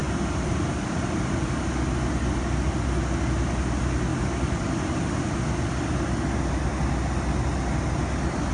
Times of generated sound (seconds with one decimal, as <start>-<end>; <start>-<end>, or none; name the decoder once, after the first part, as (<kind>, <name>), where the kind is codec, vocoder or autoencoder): 0.0-1.2 (vocoder, BigVGAN v2)